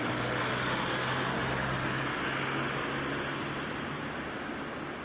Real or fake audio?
real